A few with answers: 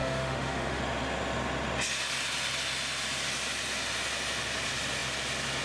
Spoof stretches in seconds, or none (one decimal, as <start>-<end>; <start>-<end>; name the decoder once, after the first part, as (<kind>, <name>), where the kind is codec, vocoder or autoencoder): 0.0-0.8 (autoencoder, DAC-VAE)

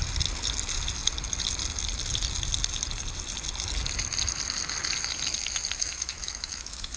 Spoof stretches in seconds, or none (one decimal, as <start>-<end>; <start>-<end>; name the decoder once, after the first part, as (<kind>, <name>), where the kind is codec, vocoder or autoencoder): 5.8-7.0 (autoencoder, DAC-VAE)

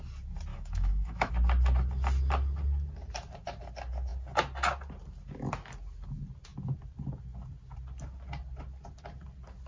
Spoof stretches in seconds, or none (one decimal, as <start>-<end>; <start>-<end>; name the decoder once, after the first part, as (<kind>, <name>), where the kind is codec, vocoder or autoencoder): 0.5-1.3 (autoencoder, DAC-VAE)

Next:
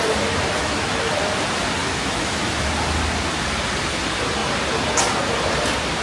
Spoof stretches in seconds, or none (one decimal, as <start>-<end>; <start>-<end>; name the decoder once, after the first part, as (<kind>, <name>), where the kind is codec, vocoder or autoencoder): 0.6-1.1 (autoencoder, DAC-VAE); 1.8-2.7

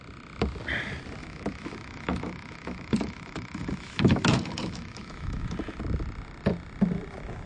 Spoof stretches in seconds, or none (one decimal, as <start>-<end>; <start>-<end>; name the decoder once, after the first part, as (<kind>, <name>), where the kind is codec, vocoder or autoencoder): 1.2-5.4 (autoencoder, DAC-VAE)

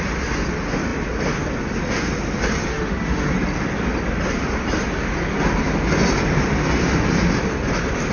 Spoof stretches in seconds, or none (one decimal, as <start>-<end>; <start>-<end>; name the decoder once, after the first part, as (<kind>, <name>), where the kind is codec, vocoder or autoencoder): 2.7-3.3 (autoencoder, DAC-VAE)

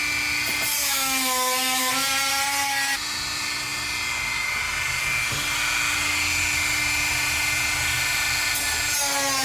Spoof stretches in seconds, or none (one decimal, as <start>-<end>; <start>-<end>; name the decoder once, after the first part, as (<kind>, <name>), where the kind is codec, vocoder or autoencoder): 0.8-1.9 (autoencoder, DAC-VAE)